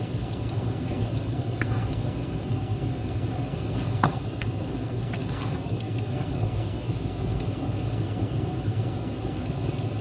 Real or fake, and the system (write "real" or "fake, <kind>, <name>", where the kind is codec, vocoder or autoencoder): fake, codec, SNAC